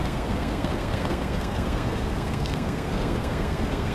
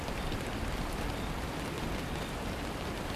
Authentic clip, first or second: second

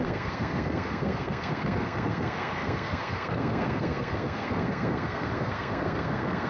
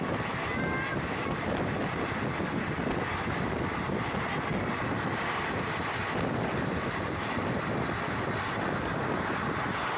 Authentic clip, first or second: second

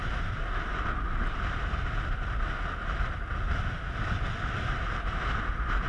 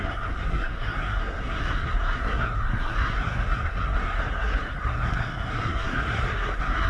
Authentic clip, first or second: first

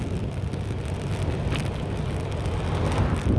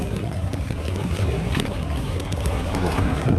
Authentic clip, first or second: first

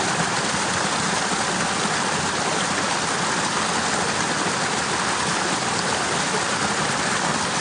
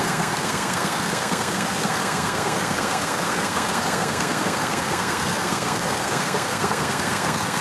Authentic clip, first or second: first